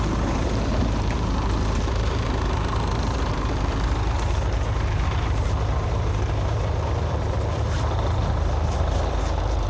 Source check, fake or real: fake